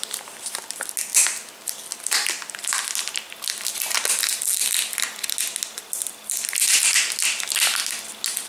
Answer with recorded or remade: recorded